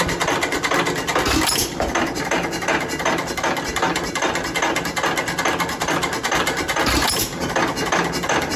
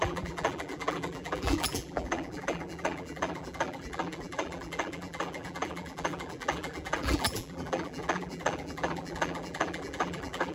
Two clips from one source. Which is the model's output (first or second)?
second